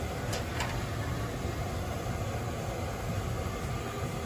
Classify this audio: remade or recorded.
recorded